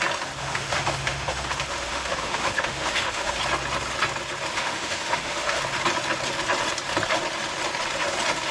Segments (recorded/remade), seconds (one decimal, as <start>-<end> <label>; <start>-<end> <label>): 0.0-0.4 recorded; 0.4-3.4 remade; 3.4-4.5 recorded; 4.5-5.6 remade; 5.6-8.5 recorded